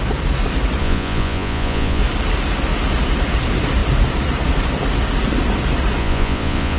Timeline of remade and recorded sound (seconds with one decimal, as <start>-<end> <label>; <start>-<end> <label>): 0.0-0.8 recorded; 0.8-2.0 remade; 2.0-6.0 recorded; 6.0-6.8 remade